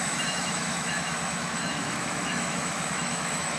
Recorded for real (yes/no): no